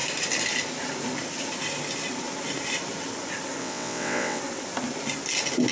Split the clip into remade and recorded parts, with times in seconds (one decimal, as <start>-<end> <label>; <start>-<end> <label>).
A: 0.0-3.6 recorded; 3.6-4.4 remade; 4.4-5.7 recorded